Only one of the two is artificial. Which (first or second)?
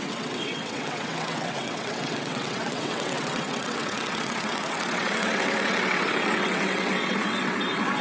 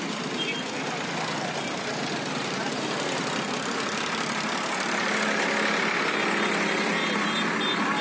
first